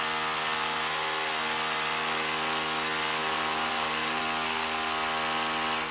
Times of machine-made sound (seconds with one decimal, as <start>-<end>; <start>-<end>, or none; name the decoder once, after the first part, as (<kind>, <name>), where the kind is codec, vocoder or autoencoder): 3.2-4.2 (vocoder, BigVGAN v2)